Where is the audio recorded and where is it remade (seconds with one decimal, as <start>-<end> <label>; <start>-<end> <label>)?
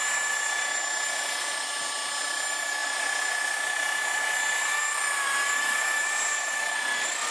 0.0-7.3 recorded